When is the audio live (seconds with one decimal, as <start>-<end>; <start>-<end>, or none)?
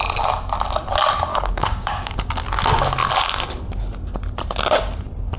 0.0-1.3; 2.1-5.4